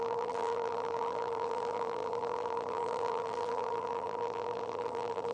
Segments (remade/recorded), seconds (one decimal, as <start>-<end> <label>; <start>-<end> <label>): 0.0-5.3 remade